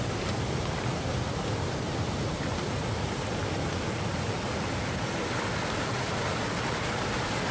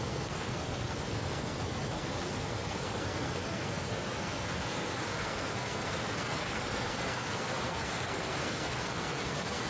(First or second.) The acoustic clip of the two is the first